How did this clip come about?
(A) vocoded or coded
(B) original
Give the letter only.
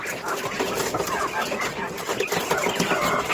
B